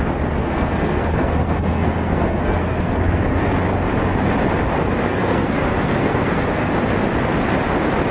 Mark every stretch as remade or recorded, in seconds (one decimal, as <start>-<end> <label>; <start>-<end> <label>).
0.0-0.4 recorded; 0.4-3.5 remade; 3.5-5.1 recorded; 5.1-6.7 remade; 6.7-8.1 recorded